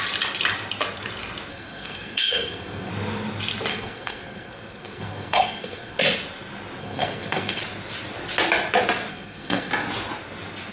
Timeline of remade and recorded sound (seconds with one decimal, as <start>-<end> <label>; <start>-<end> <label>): 0.0-1.5 recorded; 1.5-2.9 remade; 2.9-3.7 recorded; 3.7-6.0 remade; 6.0-6.8 recorded; 6.8-7.6 remade; 7.6-9.1 recorded; 9.1-9.7 remade; 9.7-10.7 recorded